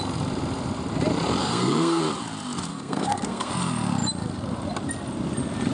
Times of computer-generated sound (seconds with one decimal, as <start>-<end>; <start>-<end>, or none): 1.4-2.0; 2.7-3.5